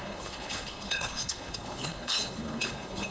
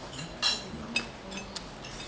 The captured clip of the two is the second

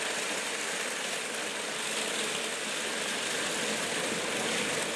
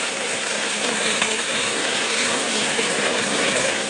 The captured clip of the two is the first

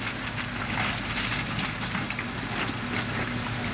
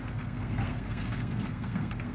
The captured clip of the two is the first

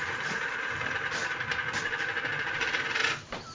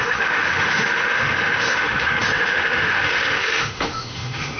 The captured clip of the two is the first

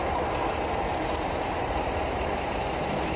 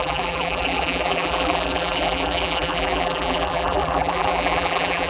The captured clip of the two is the first